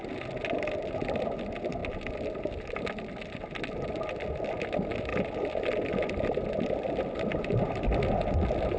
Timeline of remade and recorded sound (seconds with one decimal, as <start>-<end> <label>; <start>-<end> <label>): 0.0-8.8 recorded